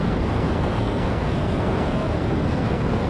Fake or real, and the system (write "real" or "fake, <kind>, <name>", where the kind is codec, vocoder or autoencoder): fake, codec, SNAC